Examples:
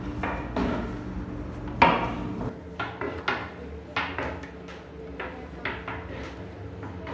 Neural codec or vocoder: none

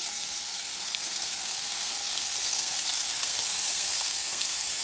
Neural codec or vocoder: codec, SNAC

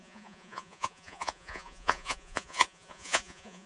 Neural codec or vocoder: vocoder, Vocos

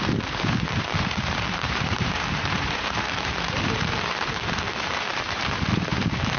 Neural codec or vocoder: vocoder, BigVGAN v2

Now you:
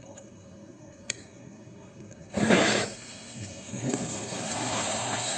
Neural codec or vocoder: codec, SNAC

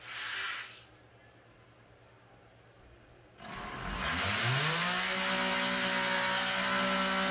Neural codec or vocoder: none